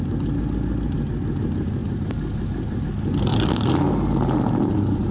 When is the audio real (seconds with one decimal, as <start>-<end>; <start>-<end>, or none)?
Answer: 0.0-1.8; 2.8-3.3

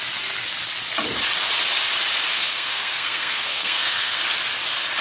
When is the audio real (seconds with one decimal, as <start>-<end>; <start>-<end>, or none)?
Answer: 0.0-2.3; 4.2-5.0

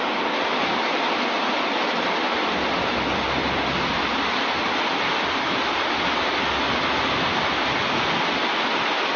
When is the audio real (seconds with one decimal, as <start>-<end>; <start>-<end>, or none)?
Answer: 0.0-3.4; 4.3-9.2

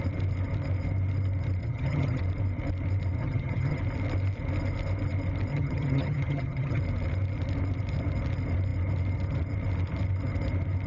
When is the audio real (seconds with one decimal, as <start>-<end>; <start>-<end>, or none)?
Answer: 0.0-1.6; 2.2-3.2; 3.8-5.5; 6.8-10.9

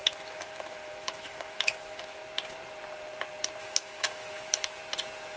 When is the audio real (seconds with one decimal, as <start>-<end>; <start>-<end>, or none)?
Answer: 2.2-3.6; 4.8-5.4

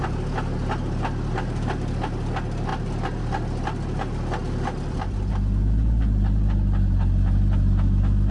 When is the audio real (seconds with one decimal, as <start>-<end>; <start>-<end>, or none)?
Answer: 0.0-8.3